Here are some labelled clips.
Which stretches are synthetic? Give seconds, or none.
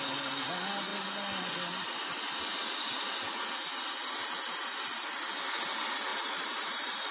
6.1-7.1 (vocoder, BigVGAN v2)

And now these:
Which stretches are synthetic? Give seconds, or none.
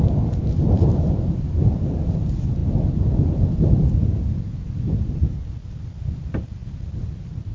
0.0-7.5 (vocoder, BigVGAN v2)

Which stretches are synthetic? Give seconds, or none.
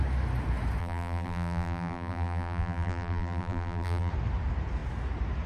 0.8-4.1 (vocoder, BigVGAN v2)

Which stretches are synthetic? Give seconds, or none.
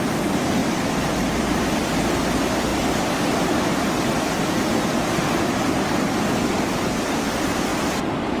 0.0-8.4 (vocoder, BigVGAN v2)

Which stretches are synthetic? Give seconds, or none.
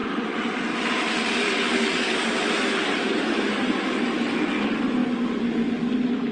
0.0-3.8 (vocoder, BigVGAN v2)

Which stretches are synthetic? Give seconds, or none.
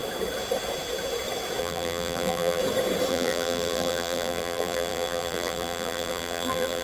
1.6-2.6 (vocoder, BigVGAN v2); 3.1-6.8